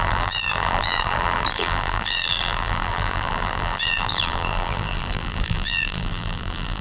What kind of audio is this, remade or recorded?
remade